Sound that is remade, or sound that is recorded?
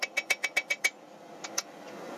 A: recorded